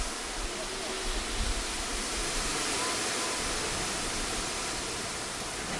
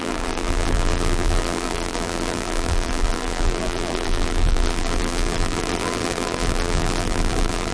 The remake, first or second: second